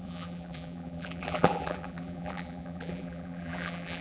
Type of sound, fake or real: fake